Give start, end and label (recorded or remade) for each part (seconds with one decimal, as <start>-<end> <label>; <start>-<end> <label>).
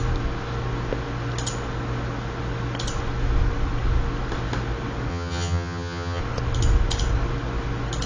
0.0-5.1 recorded; 5.1-6.2 remade; 6.2-8.1 recorded